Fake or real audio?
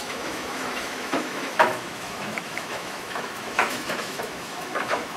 fake